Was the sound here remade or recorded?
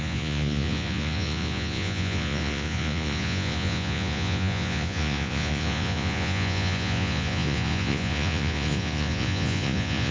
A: remade